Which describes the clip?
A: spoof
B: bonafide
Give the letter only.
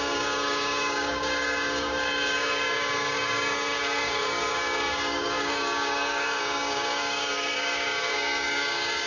A